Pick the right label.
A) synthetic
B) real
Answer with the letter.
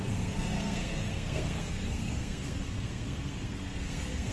A